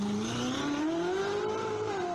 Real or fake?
real